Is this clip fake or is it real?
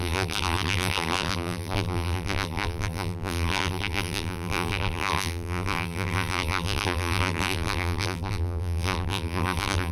fake